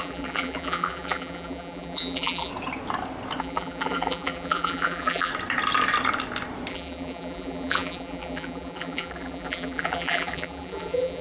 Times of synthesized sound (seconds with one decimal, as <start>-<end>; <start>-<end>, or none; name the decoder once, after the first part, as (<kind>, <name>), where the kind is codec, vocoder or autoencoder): 0.0-2.5 (vocoder, BigVGAN v2); 3.4-5.3; 6.7-11.2